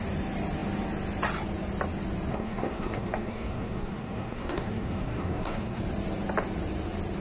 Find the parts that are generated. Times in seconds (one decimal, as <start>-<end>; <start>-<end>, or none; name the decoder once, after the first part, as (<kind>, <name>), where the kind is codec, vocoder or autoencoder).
2.3-5.8 (codec, SNAC)